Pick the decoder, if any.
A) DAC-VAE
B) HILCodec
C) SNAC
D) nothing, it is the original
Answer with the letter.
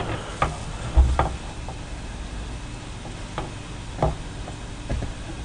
D